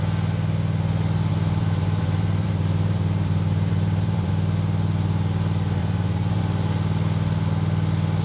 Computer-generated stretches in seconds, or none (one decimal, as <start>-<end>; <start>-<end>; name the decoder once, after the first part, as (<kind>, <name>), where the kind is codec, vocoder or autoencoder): 1.3-4.3 (vocoder, BigVGAN v2); 5.8-6.4